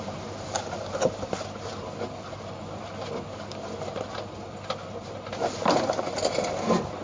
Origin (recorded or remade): recorded